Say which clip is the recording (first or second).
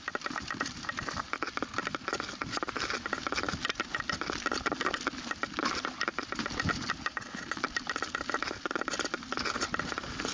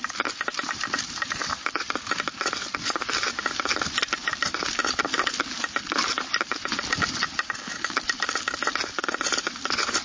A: first